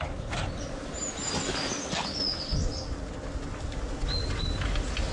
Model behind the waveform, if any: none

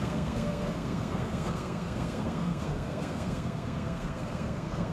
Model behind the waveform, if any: codec, SNAC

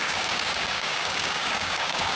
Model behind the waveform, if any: codec, DAC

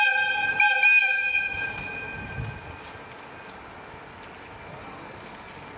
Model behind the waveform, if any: none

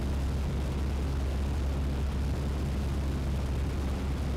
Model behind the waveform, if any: none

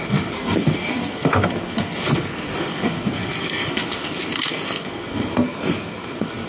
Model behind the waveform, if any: codec, SNAC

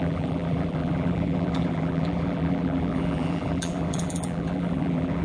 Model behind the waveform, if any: vocoder, BigVGAN v2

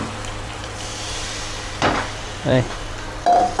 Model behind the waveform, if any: vocoder, BigVGAN v2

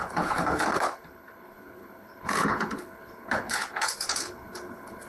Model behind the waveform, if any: codec, HILCodec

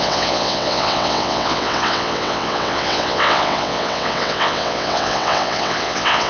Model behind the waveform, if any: vocoder, WaveNeXt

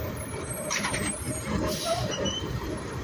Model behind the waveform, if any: vocoder, BigVGAN v2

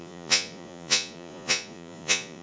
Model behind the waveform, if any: vocoder, Vocos